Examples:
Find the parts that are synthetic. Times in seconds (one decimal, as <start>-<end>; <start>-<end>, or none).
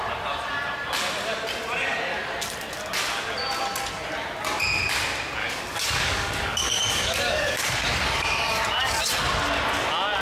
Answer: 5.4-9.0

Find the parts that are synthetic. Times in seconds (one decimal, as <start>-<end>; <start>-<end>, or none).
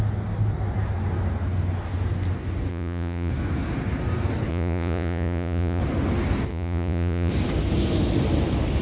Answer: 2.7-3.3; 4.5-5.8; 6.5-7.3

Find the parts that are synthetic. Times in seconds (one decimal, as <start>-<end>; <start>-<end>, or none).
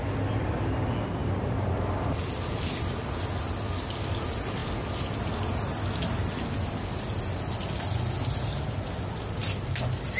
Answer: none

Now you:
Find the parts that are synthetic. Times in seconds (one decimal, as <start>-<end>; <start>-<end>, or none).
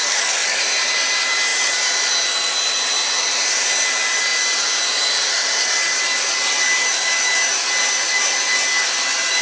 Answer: 0.0-0.6